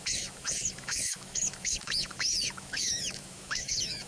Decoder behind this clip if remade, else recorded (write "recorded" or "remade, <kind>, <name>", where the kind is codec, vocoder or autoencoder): remade, autoencoder, DAC-VAE